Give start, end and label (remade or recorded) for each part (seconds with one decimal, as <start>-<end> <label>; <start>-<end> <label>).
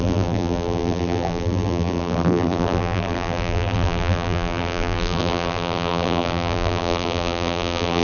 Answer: 0.0-8.0 remade